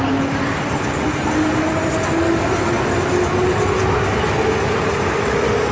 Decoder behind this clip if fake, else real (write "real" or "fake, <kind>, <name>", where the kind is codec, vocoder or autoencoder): real